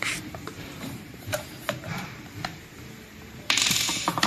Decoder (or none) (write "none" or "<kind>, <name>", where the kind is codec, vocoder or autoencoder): vocoder, BigVGAN v2